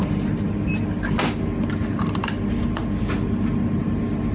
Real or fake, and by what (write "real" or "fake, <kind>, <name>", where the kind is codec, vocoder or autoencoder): real